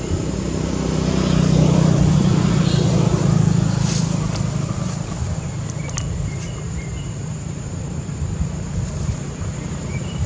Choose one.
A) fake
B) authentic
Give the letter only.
A